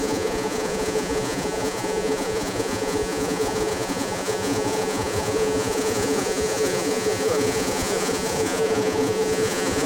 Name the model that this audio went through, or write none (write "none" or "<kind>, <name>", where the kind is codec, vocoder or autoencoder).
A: vocoder, Vocos